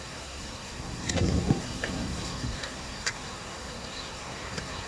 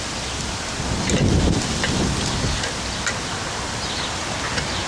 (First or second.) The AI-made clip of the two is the first